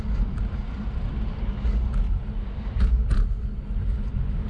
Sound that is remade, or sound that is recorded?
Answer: recorded